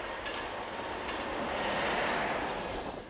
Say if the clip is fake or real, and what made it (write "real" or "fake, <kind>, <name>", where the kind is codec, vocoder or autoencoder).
real